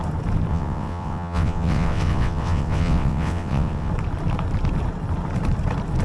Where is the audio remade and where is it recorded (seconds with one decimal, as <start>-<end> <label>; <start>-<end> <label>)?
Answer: 0.0-0.5 recorded; 0.5-3.9 remade; 3.9-6.0 recorded